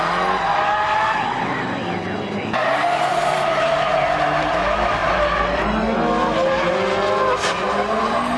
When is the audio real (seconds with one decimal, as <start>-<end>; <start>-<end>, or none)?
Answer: 0.0-3.1; 4.4-8.4